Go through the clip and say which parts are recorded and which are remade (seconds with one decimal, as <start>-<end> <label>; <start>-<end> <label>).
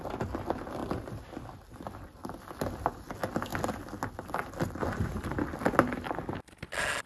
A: 0.0-7.1 recorded